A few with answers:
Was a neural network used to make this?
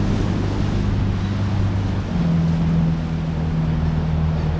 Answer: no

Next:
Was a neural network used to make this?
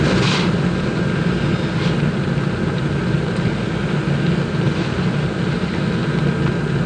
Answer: no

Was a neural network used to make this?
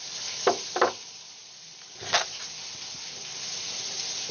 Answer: no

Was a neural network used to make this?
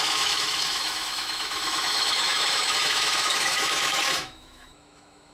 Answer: yes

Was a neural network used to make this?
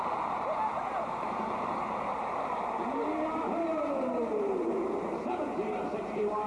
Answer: yes